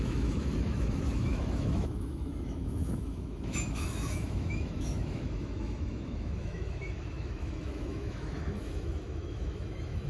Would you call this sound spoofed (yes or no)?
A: yes